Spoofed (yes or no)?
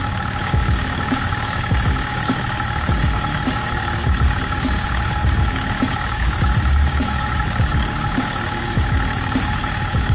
yes